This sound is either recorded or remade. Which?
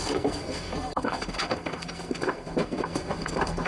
remade